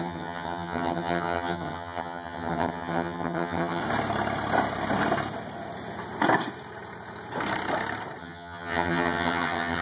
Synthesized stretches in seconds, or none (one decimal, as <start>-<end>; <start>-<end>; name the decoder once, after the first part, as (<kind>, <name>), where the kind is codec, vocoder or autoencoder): 0.0-3.8 (vocoder, HiFi-GAN); 8.2-9.8